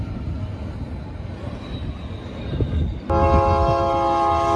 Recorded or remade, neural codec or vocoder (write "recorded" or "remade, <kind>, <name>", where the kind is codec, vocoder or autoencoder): recorded